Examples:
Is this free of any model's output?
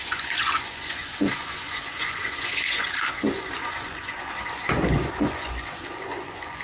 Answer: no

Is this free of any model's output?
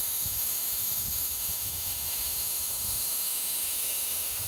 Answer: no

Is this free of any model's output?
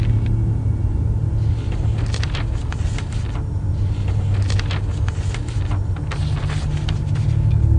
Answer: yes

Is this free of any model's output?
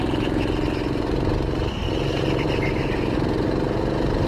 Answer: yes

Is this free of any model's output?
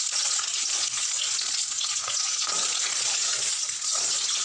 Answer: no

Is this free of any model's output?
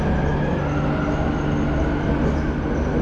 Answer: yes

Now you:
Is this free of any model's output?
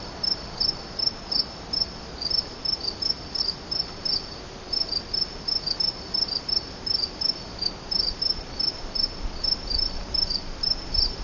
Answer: yes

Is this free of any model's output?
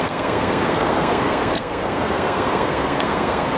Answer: no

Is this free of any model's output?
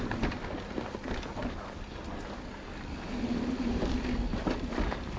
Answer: yes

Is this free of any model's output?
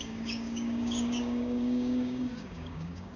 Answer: no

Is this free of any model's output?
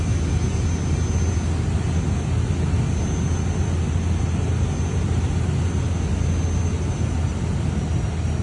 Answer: yes